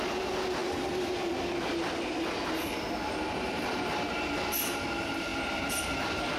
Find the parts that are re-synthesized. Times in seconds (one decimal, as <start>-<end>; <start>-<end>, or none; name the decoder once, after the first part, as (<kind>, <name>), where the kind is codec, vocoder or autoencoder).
0.6-2.7 (vocoder, BigVGAN v2)

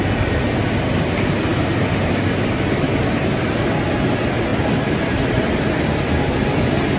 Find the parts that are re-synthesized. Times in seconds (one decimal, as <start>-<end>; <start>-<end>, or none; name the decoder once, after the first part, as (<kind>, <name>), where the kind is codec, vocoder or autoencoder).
4.5-6.2 (vocoder, BigVGAN v2)